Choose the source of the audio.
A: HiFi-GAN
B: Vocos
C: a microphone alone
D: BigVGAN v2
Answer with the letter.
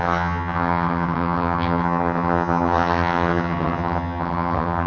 A